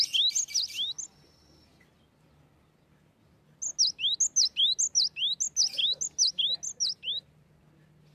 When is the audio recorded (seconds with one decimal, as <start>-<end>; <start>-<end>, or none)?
0.0-8.1

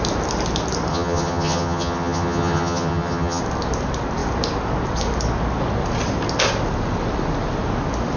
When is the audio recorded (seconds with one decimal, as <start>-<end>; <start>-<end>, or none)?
0.0-0.9; 3.4-8.2

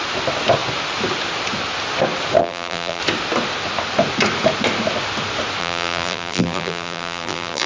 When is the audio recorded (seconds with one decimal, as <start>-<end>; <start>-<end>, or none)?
0.0-2.4; 3.0-5.6

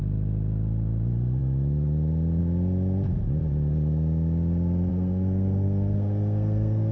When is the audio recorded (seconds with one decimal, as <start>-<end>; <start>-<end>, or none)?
0.0-4.9

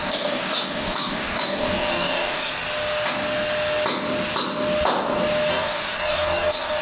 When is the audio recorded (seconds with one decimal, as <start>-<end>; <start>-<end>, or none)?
2.5-5.5

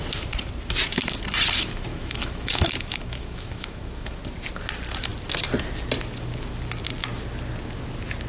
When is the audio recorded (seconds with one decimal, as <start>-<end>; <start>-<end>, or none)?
0.0-1.9; 4.2-8.3

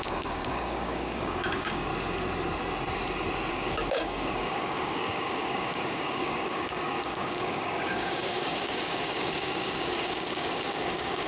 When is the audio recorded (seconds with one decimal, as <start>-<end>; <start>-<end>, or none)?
1.9-3.5

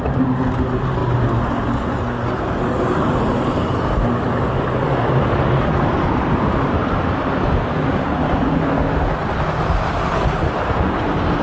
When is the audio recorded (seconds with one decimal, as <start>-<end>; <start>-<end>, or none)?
0.0-11.4